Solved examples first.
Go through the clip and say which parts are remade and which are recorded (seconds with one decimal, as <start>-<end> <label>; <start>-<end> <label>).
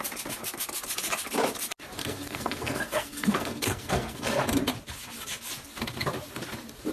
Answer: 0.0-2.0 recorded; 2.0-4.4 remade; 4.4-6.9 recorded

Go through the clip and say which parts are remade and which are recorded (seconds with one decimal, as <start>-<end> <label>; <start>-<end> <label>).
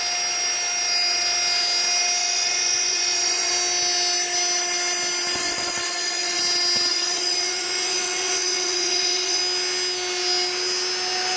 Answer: 0.0-2.2 recorded; 2.2-3.5 remade; 3.5-5.3 recorded; 5.3-6.4 remade; 6.4-6.9 recorded; 6.9-9.4 remade; 9.4-11.4 recorded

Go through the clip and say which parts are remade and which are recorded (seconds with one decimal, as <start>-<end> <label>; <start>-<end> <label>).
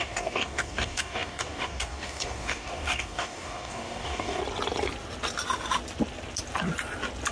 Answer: 0.0-4.4 remade; 4.4-7.3 recorded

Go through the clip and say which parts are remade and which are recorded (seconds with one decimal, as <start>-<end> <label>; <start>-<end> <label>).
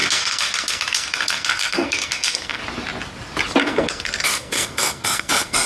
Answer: 0.0-2.6 remade; 2.6-3.6 recorded; 3.6-5.7 remade